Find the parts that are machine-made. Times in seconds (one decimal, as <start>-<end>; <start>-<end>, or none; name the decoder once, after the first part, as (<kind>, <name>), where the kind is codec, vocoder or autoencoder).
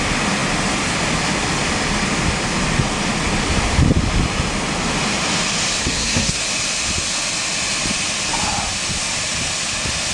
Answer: 5.8-6.4 (codec, SNAC)